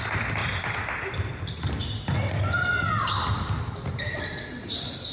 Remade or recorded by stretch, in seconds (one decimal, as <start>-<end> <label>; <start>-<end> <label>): 0.0-5.1 recorded